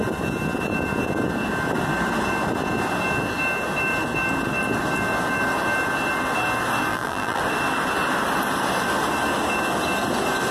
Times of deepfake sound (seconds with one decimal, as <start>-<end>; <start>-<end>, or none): 6.9-7.4